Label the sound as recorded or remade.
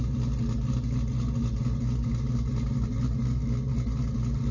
recorded